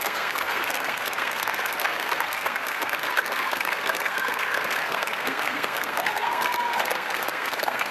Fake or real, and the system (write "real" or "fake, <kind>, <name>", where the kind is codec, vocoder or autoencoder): fake, codec, SNAC